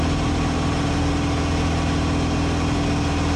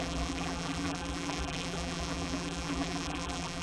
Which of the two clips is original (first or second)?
first